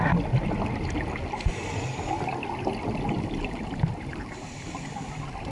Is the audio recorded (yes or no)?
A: yes